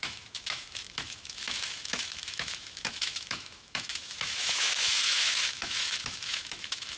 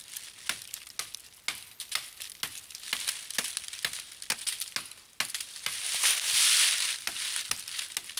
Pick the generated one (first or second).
first